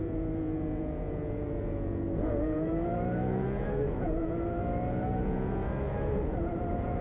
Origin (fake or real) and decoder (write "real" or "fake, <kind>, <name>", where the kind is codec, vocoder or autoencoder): fake, vocoder, Vocos